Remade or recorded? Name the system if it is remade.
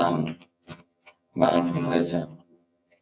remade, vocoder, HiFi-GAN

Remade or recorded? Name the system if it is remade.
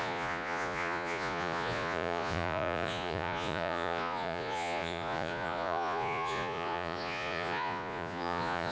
remade, vocoder, Vocos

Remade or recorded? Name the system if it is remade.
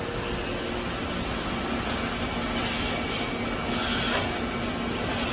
recorded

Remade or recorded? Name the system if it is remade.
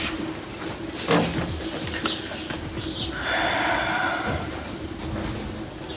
recorded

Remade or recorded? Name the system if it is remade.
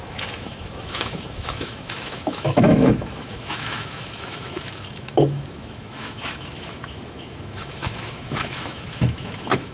remade, autoencoder, DAC-VAE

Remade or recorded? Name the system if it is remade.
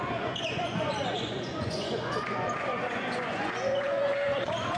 remade, vocoder, Vocos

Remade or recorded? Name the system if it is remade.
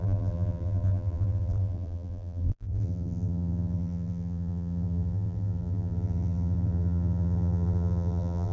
remade, vocoder, BigVGAN v2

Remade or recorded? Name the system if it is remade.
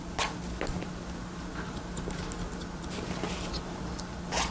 recorded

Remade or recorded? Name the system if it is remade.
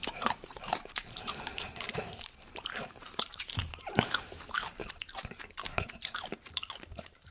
remade, vocoder, BigVGAN v2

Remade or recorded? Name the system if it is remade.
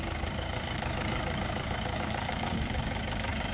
remade, codec, DAC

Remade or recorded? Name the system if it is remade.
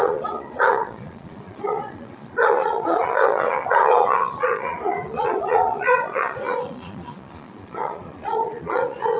remade, vocoder, Vocos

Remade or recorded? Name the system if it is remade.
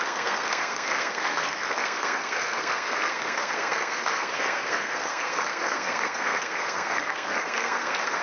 remade, codec, SNAC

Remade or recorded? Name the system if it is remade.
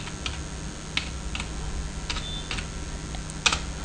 recorded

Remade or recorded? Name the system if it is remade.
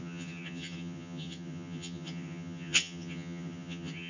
remade, vocoder, HiFi-GAN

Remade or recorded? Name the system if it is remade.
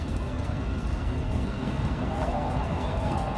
remade, codec, SNAC